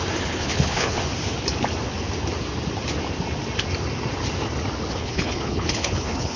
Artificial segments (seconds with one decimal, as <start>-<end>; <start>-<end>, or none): 0.0-1.1; 4.9-6.4